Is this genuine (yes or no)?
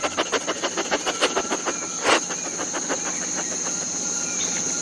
yes